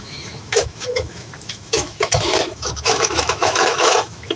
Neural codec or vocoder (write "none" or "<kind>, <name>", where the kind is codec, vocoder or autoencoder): autoencoder, DAC-VAE